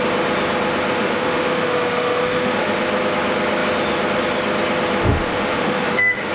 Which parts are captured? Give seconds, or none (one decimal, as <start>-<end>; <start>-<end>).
0.0-0.9; 2.7-5.0

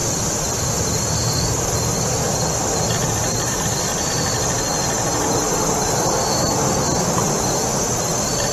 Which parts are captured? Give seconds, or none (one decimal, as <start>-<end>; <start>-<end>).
0.0-8.5

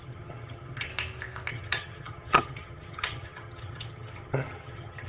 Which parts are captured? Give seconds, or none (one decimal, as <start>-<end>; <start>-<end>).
0.9-1.5

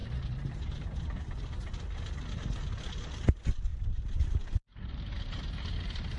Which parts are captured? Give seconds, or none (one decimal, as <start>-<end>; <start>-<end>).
1.3-3.7